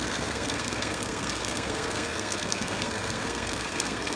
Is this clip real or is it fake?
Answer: fake